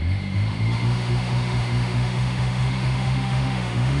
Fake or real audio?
fake